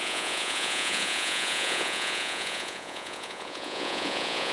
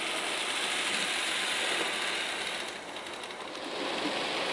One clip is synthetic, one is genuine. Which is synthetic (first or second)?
first